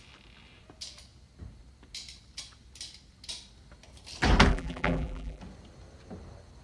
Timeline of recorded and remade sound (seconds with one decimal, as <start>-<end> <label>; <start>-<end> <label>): 0.0-4.5 recorded; 4.5-5.4 remade; 5.4-6.6 recorded